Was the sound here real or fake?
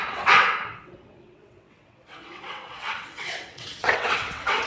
fake